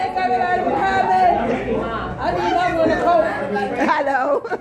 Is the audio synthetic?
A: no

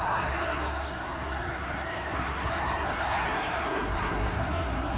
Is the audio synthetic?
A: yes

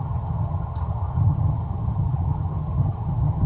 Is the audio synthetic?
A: yes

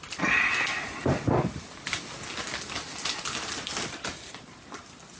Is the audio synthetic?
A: no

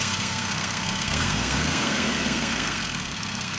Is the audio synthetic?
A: yes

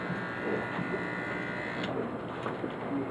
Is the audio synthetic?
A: no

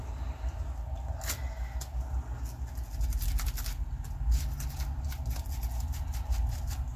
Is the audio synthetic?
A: no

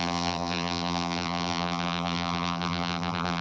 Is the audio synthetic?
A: yes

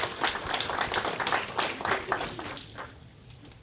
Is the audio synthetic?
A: no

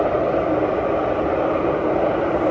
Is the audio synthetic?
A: no